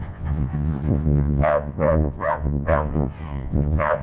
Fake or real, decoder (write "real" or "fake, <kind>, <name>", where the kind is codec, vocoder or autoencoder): fake, vocoder, Vocos